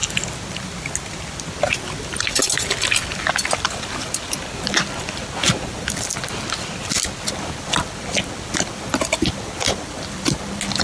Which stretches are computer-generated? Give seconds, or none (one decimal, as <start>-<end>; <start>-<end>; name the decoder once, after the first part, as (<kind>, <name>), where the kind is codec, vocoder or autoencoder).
2.0-2.4 (vocoder, BigVGAN v2); 7.6-10.8

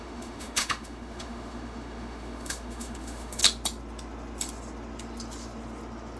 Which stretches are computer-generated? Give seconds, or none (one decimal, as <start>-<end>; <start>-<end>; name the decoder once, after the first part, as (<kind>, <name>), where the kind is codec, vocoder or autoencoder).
0.0-3.4 (autoencoder, DAC-VAE)

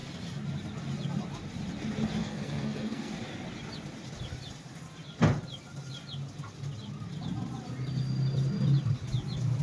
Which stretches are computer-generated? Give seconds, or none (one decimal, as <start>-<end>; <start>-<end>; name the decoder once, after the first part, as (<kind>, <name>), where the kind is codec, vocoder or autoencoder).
2.2-3.1 (codec, SNAC)

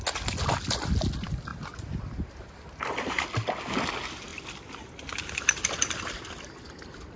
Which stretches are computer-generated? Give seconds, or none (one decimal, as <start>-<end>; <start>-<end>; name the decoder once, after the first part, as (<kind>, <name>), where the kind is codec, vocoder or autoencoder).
none

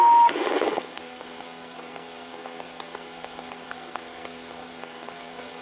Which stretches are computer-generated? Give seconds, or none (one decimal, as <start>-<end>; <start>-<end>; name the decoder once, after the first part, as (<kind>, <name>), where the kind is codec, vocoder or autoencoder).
0.0-5.6 (codec, SNAC)

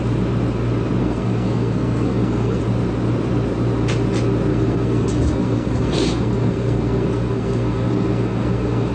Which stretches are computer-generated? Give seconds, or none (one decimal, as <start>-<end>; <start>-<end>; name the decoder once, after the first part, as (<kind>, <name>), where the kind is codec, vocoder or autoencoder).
1.0-2.6 (codec, SNAC); 4.5-8.9

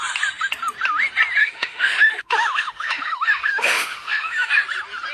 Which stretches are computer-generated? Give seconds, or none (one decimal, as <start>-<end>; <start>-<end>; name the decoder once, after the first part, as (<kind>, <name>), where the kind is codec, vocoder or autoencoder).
1.4-4.5 (autoencoder, DAC-VAE)